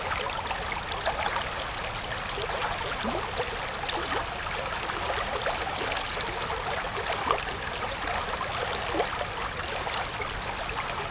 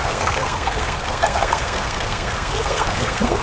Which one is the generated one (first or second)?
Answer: second